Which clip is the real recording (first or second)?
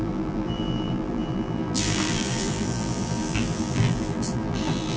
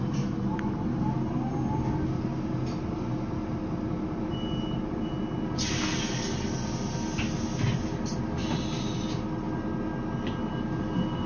second